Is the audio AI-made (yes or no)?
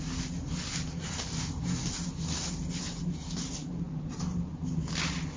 no